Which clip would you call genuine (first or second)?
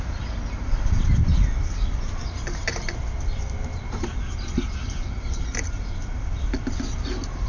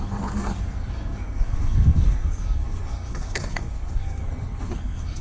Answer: first